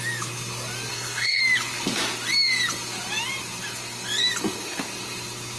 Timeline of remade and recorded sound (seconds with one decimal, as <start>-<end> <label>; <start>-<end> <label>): 0.0-0.9 recorded; 0.9-1.4 remade; 1.4-5.6 recorded